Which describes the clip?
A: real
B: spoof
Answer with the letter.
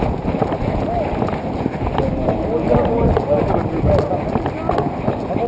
A